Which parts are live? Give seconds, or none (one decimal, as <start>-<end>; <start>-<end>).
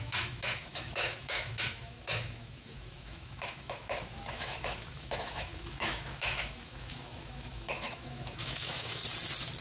9.0-9.6